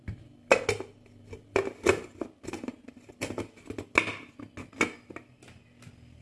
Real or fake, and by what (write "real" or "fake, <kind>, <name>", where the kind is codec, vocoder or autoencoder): real